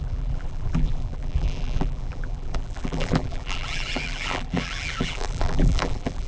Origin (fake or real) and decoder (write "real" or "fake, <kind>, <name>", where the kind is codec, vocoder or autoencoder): fake, vocoder, BigVGAN v2